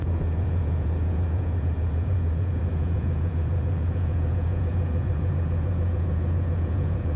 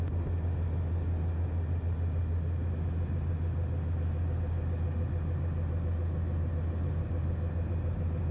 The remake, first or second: first